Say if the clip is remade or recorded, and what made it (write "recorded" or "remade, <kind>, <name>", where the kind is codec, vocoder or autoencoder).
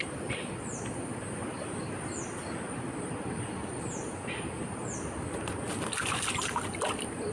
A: recorded